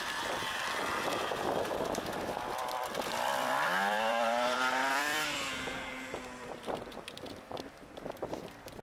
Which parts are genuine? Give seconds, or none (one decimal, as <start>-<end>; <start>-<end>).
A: none